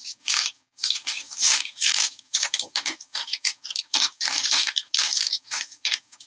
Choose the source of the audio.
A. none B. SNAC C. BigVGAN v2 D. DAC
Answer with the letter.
D